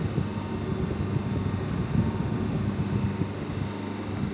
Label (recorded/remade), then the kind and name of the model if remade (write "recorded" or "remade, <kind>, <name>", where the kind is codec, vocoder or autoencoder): recorded